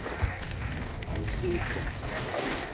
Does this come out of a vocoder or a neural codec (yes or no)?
yes